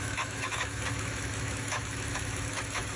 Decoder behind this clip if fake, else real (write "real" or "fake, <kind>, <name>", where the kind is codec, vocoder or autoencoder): fake, autoencoder, DAC-VAE